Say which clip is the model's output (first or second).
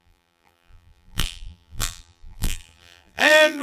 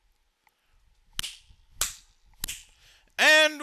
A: first